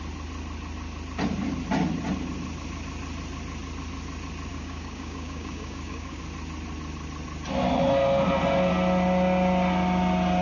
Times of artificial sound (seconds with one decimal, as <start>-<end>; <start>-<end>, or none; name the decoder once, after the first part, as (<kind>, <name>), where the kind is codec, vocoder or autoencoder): 4.5-6.2 (codec, DAC)